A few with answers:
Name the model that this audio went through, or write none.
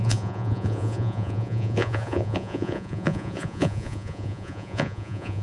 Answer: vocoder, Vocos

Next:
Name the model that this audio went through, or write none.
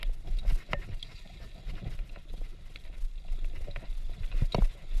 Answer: none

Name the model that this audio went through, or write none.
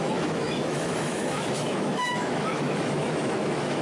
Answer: autoencoder, DAC-VAE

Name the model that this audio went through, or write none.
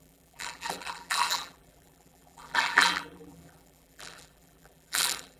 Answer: vocoder, BigVGAN v2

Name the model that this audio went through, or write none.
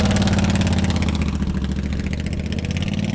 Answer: none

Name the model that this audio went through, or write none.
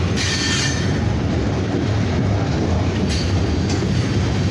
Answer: none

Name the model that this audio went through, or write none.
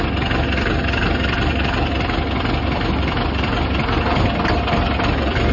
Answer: none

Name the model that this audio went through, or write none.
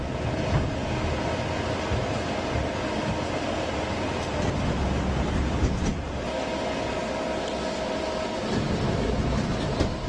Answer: none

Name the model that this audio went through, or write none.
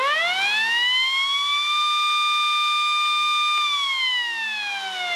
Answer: none